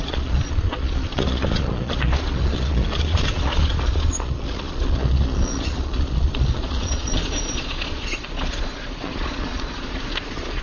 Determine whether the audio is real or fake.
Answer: fake